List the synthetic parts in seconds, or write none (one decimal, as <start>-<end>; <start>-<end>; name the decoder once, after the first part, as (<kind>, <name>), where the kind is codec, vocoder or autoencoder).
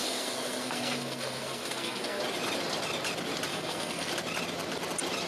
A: 0.0-2.2 (codec, SNAC); 3.5-4.1